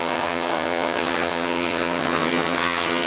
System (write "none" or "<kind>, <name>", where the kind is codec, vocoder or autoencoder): vocoder, HiFi-GAN